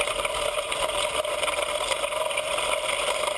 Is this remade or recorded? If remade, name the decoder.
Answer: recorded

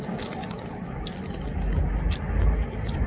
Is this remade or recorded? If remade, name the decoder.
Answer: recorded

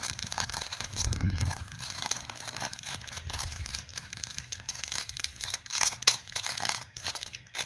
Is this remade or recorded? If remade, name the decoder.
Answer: remade, codec, SNAC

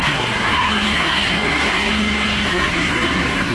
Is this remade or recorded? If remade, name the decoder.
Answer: remade, codec, SNAC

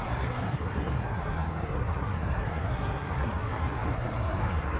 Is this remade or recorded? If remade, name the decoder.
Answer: remade, codec, SNAC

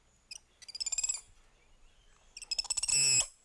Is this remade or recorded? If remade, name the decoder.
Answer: recorded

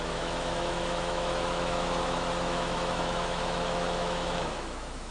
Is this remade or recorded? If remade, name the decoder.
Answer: remade, autoencoder, DAC-VAE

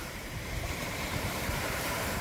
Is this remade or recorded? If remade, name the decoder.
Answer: remade, vocoder, BigVGAN v2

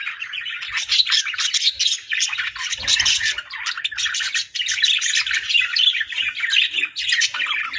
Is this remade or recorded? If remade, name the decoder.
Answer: recorded